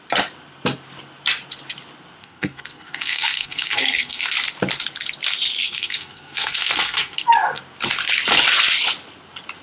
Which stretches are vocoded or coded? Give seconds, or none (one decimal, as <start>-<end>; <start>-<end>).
2.2-4.3; 5.6-7.6